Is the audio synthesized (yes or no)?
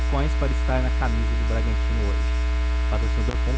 no